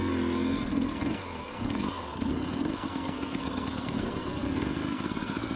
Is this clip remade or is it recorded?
remade